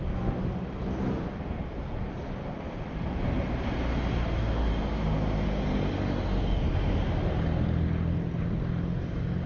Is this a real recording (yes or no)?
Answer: yes